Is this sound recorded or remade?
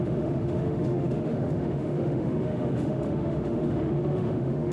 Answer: remade